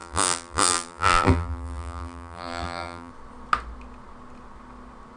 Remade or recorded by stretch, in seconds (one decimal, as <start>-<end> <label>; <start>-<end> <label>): 0.0-3.1 remade; 3.1-5.2 recorded